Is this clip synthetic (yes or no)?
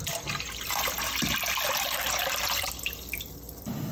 no